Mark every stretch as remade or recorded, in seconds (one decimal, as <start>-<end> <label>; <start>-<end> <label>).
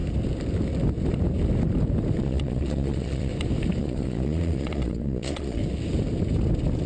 0.0-2.2 recorded; 2.2-3.3 remade; 3.3-3.8 recorded; 3.8-5.6 remade; 5.6-6.9 recorded